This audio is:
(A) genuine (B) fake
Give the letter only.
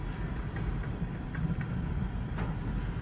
A